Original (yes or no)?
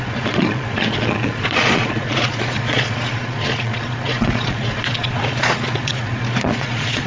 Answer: no